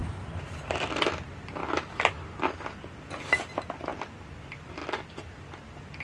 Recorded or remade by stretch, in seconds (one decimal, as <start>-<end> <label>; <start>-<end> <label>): 0.0-1.6 remade; 1.6-2.9 recorded; 2.9-4.8 remade; 4.8-5.4 recorded; 5.4-6.0 remade